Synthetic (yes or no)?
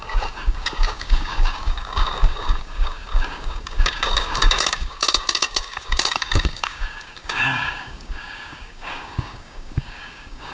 yes